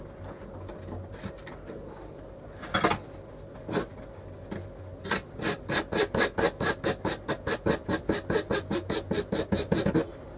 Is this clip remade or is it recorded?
recorded